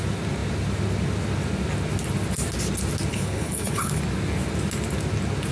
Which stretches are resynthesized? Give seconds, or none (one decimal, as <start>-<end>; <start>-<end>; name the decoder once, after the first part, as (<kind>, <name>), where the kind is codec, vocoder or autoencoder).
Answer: 3.1-4.0 (codec, HILCodec)